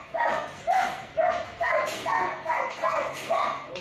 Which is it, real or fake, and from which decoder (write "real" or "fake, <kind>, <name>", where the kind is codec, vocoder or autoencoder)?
fake, codec, SNAC